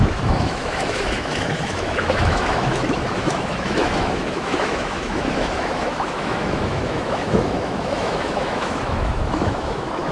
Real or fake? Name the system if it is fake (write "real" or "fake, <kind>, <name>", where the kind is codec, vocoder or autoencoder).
fake, autoencoder, DAC-VAE